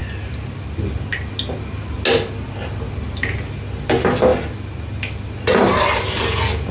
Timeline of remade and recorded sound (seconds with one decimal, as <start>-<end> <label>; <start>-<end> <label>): 0.0-6.7 recorded